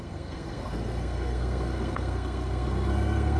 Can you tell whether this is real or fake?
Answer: fake